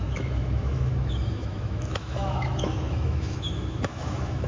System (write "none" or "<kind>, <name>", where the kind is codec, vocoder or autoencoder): autoencoder, DAC-VAE